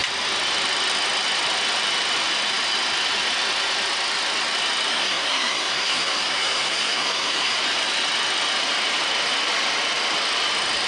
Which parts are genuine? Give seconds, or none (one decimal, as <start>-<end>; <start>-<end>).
0.0-4.9; 7.6-10.9